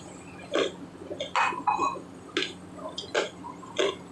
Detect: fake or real real